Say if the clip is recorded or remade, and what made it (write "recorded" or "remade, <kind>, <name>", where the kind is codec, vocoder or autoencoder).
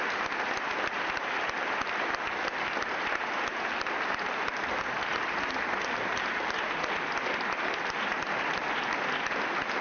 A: recorded